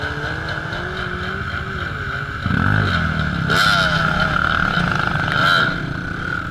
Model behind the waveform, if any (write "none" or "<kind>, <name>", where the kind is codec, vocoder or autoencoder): none